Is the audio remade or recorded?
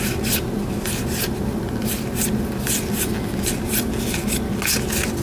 recorded